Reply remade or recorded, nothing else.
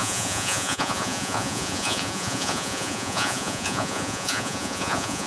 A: remade